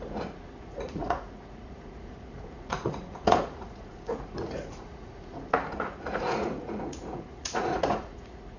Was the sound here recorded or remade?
remade